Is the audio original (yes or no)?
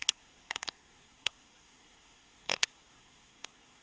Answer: no